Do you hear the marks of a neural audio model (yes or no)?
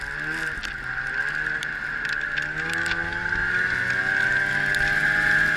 no